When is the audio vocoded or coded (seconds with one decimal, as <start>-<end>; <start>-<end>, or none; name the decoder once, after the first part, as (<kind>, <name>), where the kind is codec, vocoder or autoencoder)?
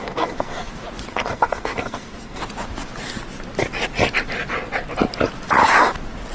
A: 0.0-0.7 (codec, SNAC); 1.1-2.4